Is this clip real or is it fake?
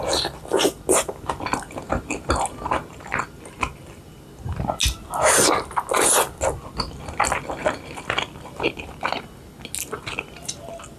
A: real